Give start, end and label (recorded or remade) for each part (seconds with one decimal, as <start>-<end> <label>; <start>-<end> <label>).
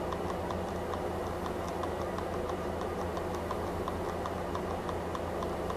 0.0-1.7 recorded; 1.7-3.3 remade; 3.3-5.8 recorded